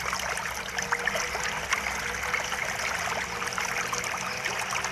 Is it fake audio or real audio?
real